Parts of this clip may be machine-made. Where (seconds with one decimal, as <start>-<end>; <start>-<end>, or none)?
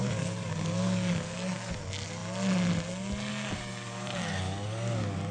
0.0-1.7; 3.3-5.3